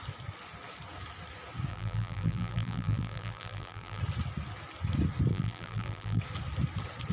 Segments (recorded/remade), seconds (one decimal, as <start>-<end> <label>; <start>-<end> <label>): 0.0-1.7 recorded; 1.7-4.0 remade; 4.0-5.3 recorded; 5.3-6.2 remade; 6.2-7.1 recorded